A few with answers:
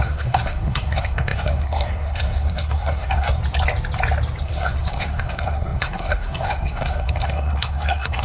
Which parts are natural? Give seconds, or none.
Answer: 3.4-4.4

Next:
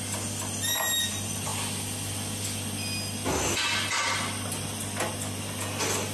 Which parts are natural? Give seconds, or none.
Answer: 0.0-6.1

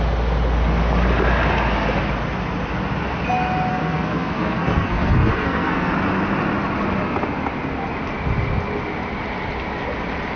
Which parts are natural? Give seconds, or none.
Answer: 0.0-3.7; 5.9-10.4

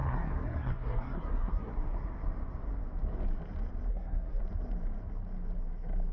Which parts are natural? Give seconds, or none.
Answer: 1.7-3.9; 4.4-6.1

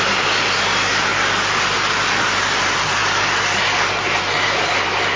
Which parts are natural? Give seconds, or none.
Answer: 0.0-5.2

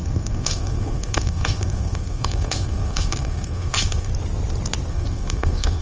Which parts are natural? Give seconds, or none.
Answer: 4.1-4.9

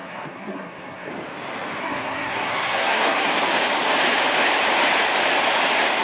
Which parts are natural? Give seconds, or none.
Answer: 1.1-1.8; 3.3-6.0

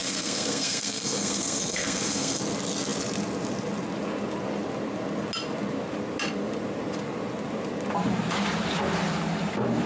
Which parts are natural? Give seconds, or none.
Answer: 2.4-9.9